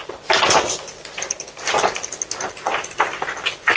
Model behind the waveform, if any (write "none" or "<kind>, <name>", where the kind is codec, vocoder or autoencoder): none